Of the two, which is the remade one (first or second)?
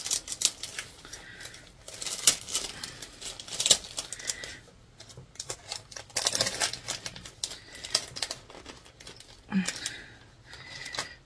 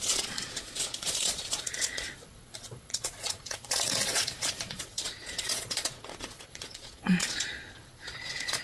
second